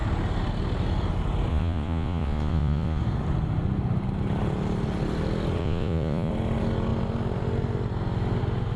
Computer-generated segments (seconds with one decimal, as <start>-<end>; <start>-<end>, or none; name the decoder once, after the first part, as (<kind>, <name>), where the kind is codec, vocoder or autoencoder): 1.5-3.0 (vocoder, Vocos); 5.6-6.3